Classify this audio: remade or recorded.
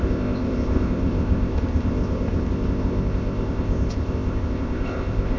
remade